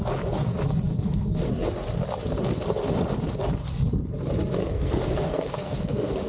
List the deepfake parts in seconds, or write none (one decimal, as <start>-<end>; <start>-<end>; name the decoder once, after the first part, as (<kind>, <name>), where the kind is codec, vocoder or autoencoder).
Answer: 0.9-1.5 (codec, SNAC); 4.6-6.3